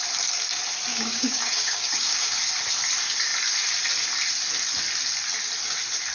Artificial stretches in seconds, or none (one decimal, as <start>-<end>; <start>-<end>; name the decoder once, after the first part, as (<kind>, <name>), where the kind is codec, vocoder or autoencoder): 0.9-2.4 (codec, DAC)